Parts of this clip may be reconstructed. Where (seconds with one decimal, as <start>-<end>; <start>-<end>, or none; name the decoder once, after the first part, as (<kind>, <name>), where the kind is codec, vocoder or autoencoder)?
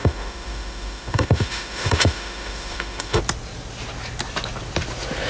0.0-3.2 (autoencoder, DAC-VAE)